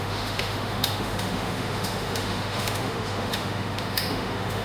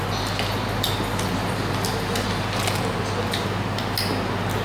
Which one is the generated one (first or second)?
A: first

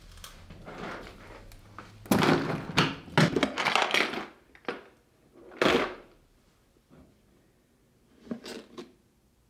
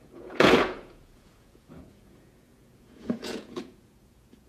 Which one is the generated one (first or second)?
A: second